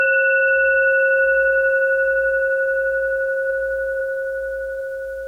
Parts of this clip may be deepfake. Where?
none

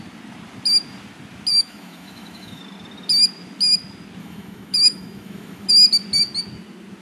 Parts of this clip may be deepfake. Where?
1.5-2.6 (autoencoder, DAC-VAE); 4.2-5.7